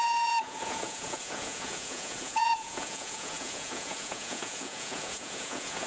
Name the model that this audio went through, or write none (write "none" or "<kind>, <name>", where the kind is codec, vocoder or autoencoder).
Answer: vocoder, Vocos